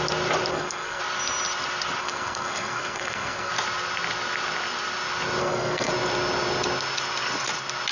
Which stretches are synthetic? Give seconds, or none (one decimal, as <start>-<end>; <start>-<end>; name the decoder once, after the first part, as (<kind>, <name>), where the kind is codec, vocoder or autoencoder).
0.5-1.0 (codec, SNAC); 2.0-3.5; 5.4-5.9